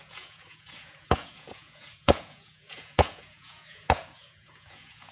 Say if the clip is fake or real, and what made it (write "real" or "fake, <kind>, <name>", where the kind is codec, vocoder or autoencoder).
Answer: fake, vocoder, Vocos